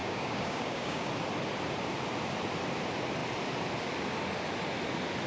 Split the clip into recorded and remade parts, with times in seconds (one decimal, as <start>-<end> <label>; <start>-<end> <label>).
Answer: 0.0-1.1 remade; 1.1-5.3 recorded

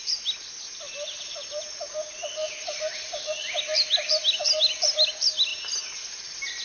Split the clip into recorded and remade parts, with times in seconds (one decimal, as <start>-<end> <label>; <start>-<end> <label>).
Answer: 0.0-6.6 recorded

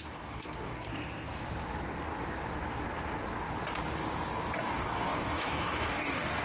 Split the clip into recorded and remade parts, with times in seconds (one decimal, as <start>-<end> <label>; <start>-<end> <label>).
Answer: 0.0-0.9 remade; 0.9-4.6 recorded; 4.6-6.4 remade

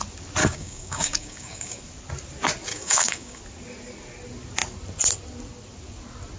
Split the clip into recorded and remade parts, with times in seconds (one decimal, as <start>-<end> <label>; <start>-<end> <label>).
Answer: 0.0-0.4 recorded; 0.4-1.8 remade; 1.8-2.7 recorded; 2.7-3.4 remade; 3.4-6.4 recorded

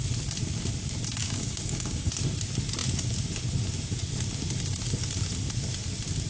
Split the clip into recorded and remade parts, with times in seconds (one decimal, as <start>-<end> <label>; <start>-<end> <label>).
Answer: 0.0-1.2 recorded; 1.2-2.1 remade; 2.1-6.3 recorded

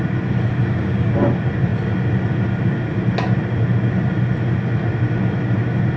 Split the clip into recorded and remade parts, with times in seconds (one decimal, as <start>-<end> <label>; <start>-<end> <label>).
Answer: 0.0-0.6 recorded; 0.6-1.1 remade; 1.1-6.0 recorded

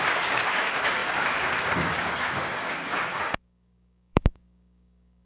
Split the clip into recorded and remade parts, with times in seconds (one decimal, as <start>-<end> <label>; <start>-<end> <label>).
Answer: 0.0-5.2 remade